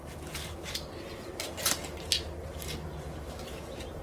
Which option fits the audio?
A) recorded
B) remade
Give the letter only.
B